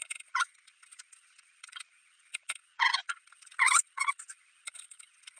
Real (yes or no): no